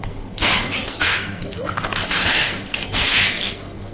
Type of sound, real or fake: fake